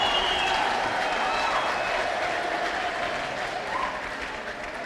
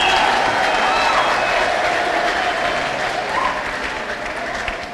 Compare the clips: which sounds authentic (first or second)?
second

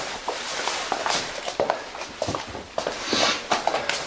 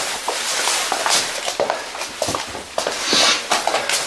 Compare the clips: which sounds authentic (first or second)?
second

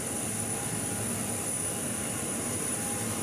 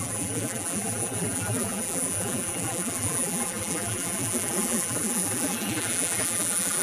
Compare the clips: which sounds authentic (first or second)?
first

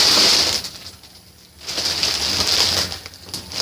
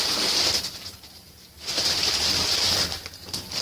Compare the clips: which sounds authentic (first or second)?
first